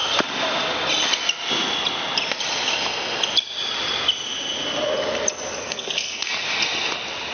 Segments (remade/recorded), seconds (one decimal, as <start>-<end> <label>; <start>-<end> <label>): 0.0-5.6 recorded; 5.6-6.3 remade; 6.3-7.3 recorded